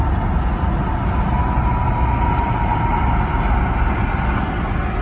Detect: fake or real real